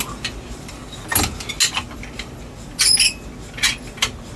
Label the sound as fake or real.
real